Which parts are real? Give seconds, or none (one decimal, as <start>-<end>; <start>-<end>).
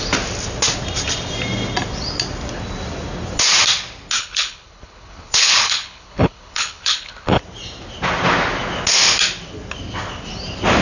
0.0-4.2; 7.4-10.8